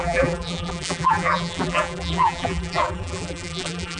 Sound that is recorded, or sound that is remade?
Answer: remade